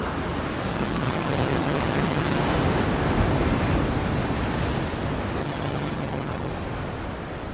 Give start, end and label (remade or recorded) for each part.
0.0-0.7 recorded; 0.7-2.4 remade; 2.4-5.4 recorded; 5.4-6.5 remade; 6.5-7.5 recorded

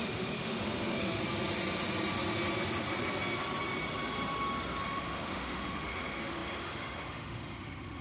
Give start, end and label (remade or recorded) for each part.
0.0-1.2 remade; 1.2-4.8 recorded; 4.8-8.0 remade

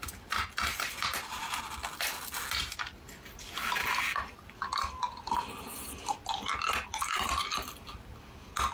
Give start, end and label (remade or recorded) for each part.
0.0-8.7 recorded

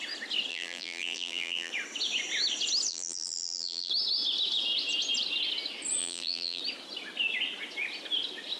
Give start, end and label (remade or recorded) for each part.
0.0-0.5 recorded; 0.5-1.7 remade; 1.7-2.9 recorded; 2.9-3.9 remade; 3.9-6.0 recorded; 6.0-6.6 remade; 6.6-8.6 recorded

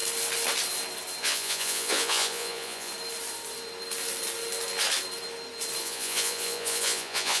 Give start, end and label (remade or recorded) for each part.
0.0-1.2 recorded; 1.2-2.9 remade; 2.9-5.8 recorded; 5.8-7.4 remade

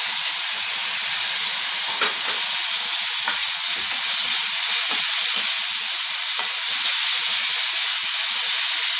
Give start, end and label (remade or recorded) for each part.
0.0-3.4 recorded; 3.4-4.0 remade; 4.0-9.0 recorded